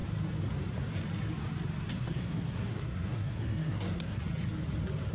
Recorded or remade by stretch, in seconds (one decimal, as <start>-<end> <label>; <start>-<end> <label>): 0.0-1.9 recorded; 1.9-4.2 remade; 4.2-5.1 recorded